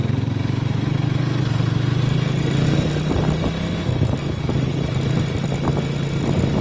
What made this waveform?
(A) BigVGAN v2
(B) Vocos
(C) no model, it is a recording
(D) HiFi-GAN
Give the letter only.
C